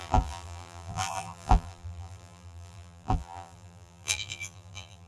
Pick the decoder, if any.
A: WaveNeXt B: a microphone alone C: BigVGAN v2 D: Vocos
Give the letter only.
C